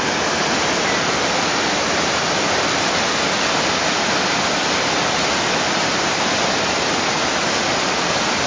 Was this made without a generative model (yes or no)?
no